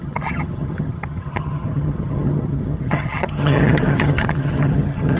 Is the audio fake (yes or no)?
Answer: yes